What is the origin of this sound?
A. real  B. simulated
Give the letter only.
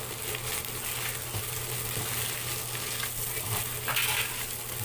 A